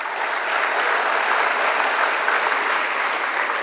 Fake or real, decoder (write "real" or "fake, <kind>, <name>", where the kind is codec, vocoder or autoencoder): real